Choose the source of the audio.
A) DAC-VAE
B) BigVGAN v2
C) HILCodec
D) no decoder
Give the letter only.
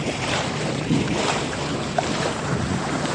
B